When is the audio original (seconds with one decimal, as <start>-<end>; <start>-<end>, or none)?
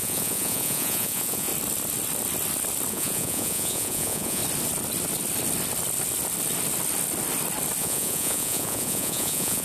1.5-2.9; 4.4-7.8